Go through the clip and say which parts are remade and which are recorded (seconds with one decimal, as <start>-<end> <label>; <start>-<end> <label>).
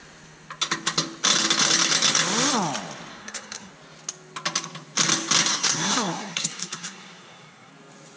0.0-3.1 recorded; 3.1-3.7 remade; 3.7-5.5 recorded; 5.5-7.7 remade; 7.7-8.2 recorded